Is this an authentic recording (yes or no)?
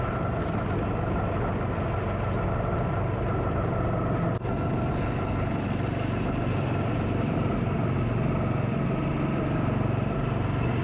yes